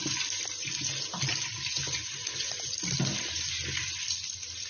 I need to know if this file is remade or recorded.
recorded